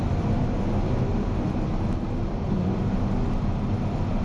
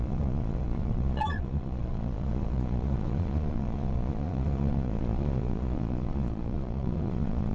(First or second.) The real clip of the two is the first